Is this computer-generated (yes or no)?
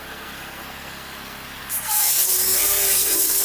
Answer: yes